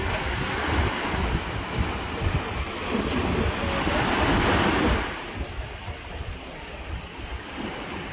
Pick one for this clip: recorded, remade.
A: recorded